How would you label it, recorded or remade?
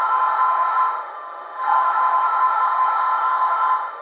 remade